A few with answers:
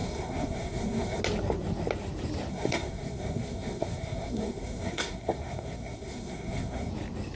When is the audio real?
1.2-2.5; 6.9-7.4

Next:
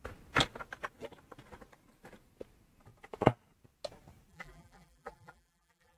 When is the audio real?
0.0-4.3